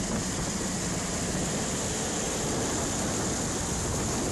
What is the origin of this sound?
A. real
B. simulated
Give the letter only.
A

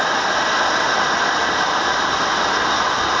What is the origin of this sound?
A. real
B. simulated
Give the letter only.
A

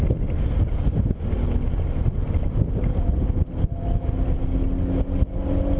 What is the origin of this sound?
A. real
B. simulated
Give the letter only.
A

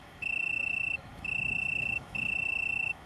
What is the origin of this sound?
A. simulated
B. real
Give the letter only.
A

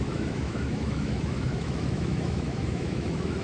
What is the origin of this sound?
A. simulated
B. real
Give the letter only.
A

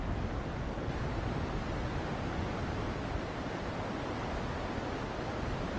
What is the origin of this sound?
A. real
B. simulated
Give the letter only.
A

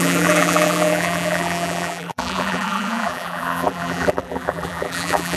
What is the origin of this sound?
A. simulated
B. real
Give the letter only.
A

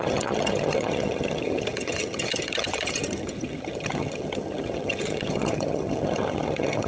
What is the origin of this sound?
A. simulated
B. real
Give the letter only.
A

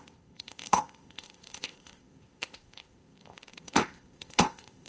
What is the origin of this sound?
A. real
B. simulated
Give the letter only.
B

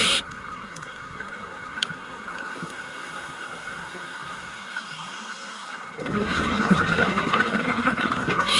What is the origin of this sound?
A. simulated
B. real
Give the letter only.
A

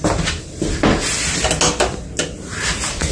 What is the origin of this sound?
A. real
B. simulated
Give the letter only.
A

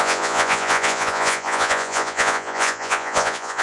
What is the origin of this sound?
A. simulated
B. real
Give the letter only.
A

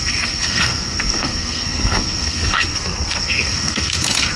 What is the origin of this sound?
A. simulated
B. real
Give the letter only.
A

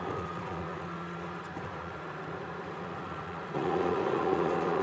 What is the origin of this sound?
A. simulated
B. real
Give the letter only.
A